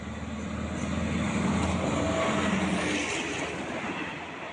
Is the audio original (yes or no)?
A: yes